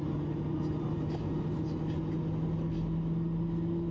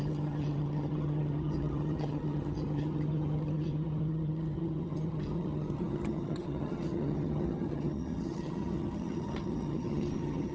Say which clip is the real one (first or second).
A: first